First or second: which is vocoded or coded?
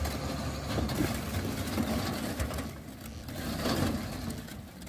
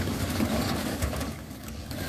second